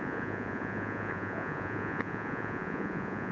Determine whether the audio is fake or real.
fake